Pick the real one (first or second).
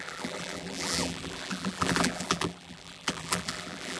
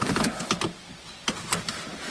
second